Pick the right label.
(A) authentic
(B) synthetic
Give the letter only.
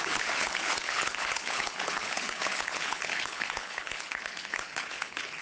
B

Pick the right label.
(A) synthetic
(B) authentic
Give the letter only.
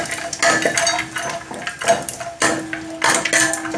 B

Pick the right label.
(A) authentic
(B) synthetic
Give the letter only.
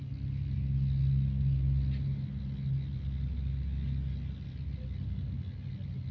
A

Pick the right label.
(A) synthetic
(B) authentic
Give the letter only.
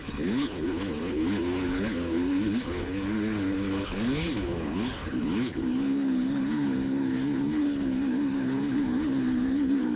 A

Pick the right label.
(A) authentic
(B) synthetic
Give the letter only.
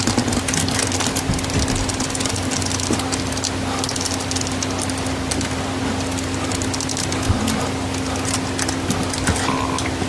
A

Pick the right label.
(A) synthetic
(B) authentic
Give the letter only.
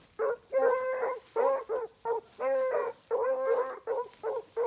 B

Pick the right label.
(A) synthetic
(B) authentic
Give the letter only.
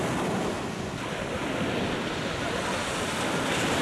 B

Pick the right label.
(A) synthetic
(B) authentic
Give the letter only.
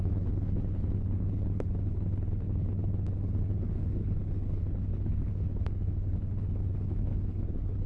A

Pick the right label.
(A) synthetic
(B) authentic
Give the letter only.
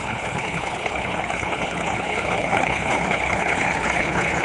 A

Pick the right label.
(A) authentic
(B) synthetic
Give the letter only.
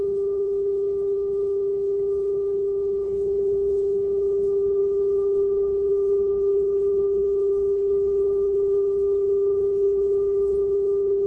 B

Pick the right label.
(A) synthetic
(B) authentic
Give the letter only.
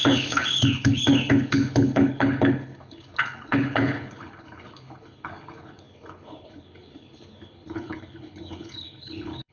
A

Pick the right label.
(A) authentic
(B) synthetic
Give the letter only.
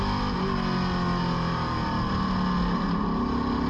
A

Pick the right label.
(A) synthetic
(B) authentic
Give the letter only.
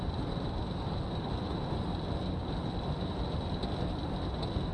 B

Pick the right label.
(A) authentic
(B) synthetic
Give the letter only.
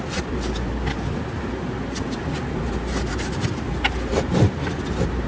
A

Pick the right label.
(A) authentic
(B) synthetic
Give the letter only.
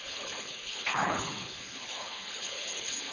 B